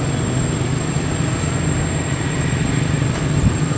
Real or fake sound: real